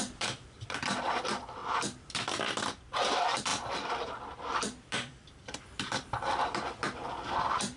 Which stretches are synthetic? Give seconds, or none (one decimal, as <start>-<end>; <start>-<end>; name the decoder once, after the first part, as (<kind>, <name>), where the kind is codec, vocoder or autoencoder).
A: 0.0-7.8 (vocoder, BigVGAN v2)